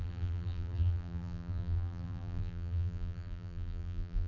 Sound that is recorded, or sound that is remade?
remade